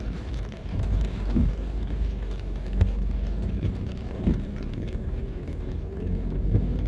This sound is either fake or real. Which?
fake